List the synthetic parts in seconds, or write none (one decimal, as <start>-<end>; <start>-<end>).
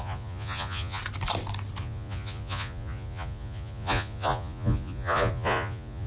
0.0-1.0; 1.8-6.1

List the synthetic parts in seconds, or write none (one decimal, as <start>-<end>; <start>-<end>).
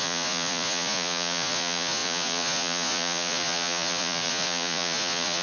0.0-5.4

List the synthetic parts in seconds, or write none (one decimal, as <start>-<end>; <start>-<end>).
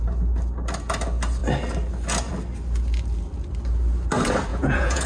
4.5-5.1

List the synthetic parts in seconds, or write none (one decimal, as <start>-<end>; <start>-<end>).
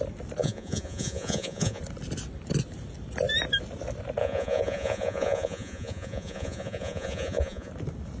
0.4-1.8; 4.2-7.7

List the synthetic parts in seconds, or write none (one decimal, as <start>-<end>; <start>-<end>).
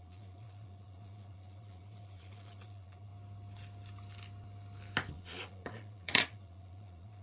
0.0-3.1; 5.1-7.2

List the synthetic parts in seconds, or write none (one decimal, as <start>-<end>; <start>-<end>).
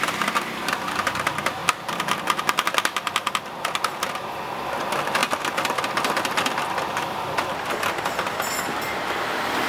none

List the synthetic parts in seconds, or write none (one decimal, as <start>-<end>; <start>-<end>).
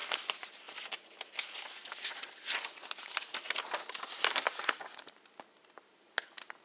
none